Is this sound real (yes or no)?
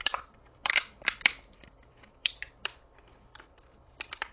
no